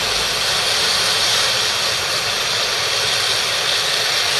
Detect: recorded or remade recorded